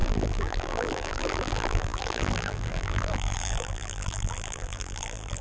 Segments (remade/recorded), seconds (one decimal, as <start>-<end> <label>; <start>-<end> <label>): 0.0-5.4 remade